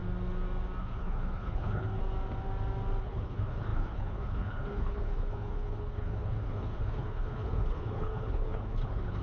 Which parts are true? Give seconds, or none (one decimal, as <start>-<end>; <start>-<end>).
0.0-0.8; 2.0-3.0